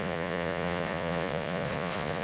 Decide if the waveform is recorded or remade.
remade